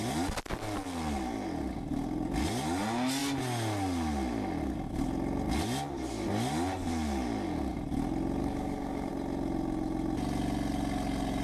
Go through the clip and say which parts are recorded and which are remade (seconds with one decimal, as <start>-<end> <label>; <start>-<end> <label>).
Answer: 0.0-8.4 recorded; 8.4-9.1 remade; 9.1-11.4 recorded